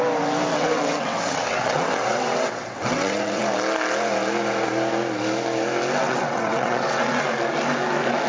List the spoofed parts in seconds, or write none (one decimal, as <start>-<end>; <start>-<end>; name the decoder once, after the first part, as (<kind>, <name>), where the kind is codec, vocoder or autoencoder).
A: 0.5-3.4 (vocoder, WaveNeXt); 6.0-7.2